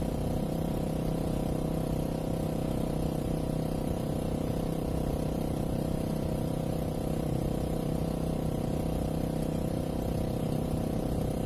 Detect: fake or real fake